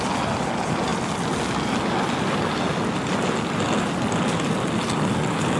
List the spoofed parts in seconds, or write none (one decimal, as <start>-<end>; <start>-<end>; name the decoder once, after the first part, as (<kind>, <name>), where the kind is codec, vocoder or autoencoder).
none